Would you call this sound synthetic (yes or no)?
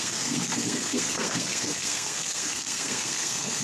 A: yes